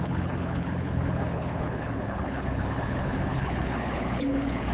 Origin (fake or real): fake